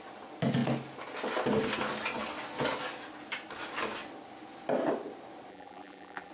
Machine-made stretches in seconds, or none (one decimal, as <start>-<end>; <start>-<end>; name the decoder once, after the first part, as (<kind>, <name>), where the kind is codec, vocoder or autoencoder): 5.5-6.3 (vocoder, BigVGAN v2)